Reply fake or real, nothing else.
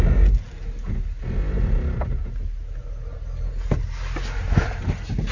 real